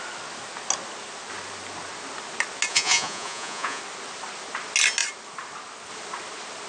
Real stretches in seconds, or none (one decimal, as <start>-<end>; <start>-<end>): 0.0-2.7; 3.8-6.7